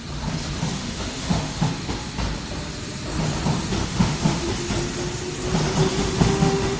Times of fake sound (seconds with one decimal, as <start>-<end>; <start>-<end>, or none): 0.8-1.7; 3.8-4.5; 6.0-6.8